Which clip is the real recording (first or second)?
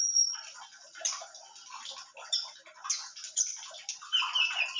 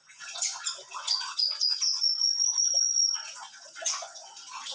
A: first